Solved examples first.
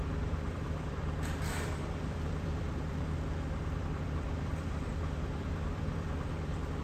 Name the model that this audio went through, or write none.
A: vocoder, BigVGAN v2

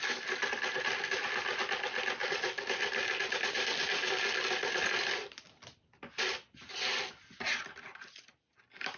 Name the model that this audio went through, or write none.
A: none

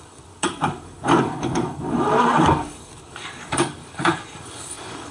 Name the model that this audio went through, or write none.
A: codec, DAC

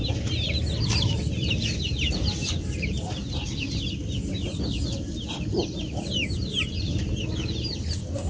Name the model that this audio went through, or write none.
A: none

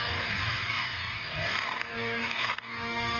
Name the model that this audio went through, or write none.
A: codec, DAC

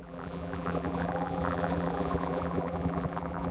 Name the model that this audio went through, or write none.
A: vocoder, BigVGAN v2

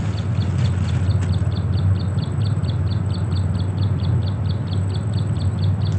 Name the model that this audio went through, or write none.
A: none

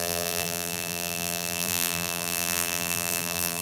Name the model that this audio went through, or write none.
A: vocoder, BigVGAN v2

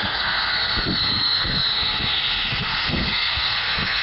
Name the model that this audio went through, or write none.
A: codec, SNAC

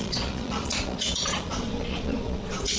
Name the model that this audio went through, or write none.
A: vocoder, Vocos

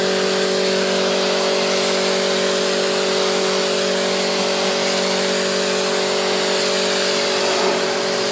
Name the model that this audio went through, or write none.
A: none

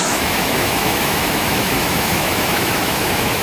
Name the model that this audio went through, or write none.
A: autoencoder, DAC-VAE